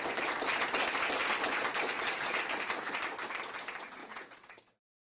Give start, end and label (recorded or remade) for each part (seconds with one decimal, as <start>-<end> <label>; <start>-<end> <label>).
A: 0.0-4.0 recorded; 4.0-4.6 remade; 4.6-5.1 recorded